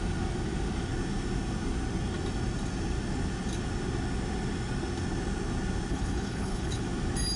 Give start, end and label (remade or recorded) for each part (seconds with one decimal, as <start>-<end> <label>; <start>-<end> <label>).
0.0-5.9 recorded; 5.9-6.8 remade; 6.8-7.4 recorded